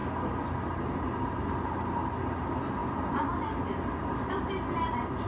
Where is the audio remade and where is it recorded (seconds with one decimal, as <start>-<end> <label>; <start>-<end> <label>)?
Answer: 0.0-5.3 recorded